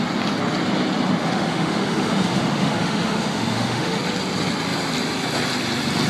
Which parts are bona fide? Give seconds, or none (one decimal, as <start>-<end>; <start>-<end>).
0.0-1.2; 4.0-6.1